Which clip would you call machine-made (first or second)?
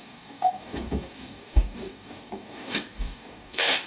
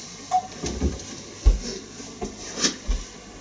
first